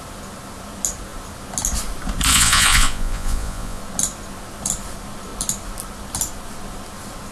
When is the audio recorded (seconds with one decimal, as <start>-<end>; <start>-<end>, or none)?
0.0-2.3; 3.8-7.3